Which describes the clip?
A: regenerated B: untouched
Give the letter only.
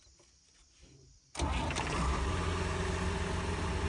B